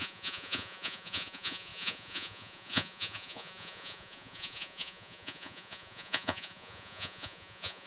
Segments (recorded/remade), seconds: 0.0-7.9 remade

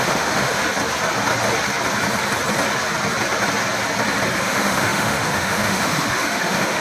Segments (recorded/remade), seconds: 0.0-0.6 remade; 0.6-4.4 recorded; 4.4-6.8 remade

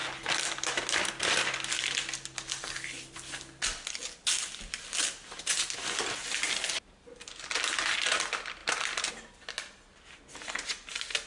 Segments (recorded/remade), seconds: 0.0-8.6 recorded; 8.6-9.1 remade; 9.1-11.3 recorded

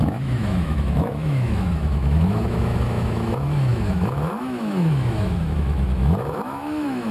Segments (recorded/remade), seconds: 0.0-7.1 remade

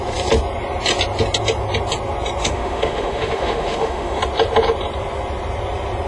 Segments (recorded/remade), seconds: 0.0-2.4 recorded; 2.4-4.2 remade; 4.2-6.1 recorded

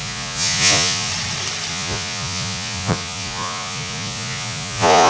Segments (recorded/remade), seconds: 0.0-1.1 remade; 1.1-1.7 recorded; 1.7-5.1 remade